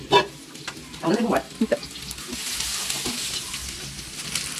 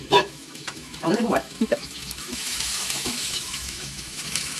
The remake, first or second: second